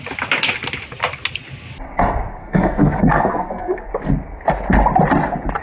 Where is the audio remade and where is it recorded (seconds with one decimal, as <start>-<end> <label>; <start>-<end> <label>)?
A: 0.0-2.3 recorded; 2.3-3.9 remade; 3.9-5.6 recorded